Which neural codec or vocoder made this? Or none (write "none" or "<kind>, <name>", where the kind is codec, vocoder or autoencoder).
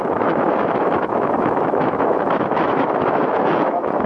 autoencoder, DAC-VAE